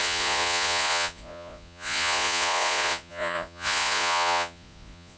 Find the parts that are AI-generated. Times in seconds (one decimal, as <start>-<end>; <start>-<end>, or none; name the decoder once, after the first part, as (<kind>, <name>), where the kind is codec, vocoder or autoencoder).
0.0-5.2 (vocoder, Vocos)